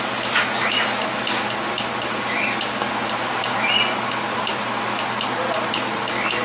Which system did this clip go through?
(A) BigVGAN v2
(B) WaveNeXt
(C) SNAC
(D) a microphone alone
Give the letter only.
D